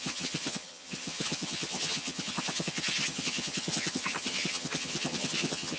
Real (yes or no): no